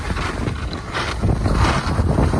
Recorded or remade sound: recorded